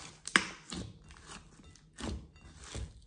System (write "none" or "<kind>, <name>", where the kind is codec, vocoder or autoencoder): none